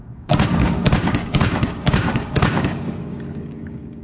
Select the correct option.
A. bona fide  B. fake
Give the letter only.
B